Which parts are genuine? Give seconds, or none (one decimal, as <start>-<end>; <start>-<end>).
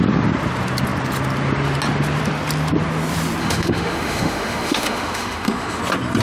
0.0-3.4; 5.8-6.2